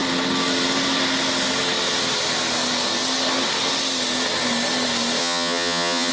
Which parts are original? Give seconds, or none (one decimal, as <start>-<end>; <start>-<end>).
0.0-5.2